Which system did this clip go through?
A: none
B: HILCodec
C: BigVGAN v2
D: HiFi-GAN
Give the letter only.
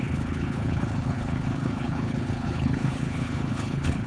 B